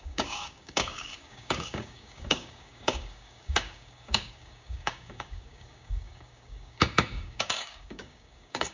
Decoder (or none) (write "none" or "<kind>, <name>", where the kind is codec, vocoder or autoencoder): codec, DAC